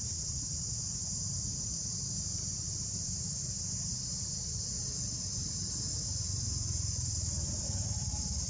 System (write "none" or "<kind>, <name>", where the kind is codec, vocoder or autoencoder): vocoder, BigVGAN v2